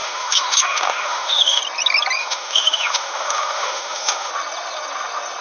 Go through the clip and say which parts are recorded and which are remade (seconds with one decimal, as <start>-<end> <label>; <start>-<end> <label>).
0.0-1.6 remade; 1.6-2.2 recorded; 2.2-4.3 remade; 4.3-5.4 recorded